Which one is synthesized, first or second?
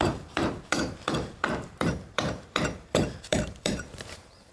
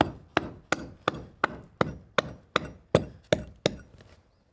first